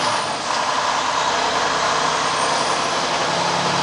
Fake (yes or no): no